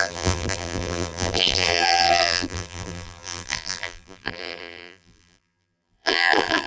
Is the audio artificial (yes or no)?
yes